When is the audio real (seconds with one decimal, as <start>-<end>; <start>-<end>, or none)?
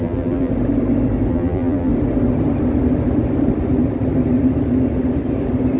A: 0.5-1.3; 1.9-5.8